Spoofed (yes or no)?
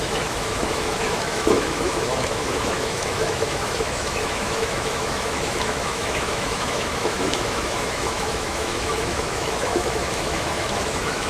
yes